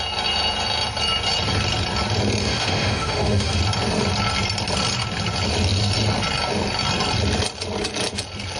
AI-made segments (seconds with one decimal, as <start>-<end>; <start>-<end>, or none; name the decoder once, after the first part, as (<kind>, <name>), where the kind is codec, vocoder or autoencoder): 2.4-3.6 (autoencoder, DAC-VAE)